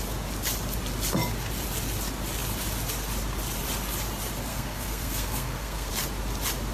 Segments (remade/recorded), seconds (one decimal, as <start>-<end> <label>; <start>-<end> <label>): 0.0-4.5 recorded; 4.5-5.9 remade; 5.9-6.7 recorded